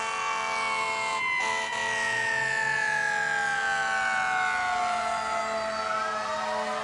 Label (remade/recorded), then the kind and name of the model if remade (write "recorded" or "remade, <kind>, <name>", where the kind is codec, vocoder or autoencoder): recorded